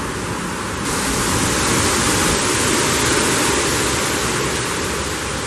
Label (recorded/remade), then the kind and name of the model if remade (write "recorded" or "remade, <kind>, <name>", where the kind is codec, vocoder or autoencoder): recorded